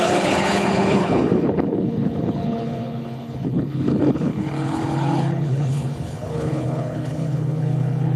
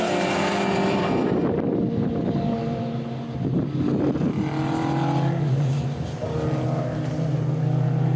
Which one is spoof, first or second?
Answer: first